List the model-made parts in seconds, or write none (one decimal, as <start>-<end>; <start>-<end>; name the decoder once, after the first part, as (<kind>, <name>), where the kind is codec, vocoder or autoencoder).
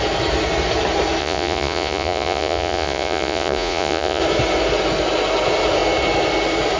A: 1.2-4.2 (vocoder, Vocos)